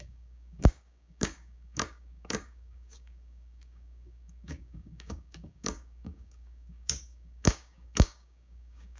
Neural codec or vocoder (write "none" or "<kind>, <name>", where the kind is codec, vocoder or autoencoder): codec, DAC